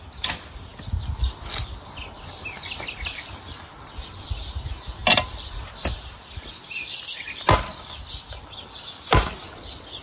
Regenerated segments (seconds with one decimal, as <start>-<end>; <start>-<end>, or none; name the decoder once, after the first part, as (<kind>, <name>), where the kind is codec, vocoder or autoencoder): none